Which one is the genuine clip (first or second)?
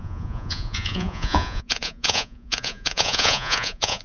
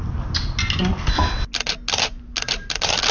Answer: second